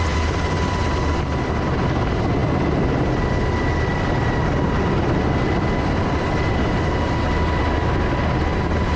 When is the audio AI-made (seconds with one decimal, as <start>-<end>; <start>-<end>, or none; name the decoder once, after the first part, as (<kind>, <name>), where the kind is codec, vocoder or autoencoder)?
none